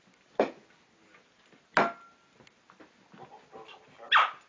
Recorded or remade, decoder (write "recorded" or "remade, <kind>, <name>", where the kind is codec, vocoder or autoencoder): recorded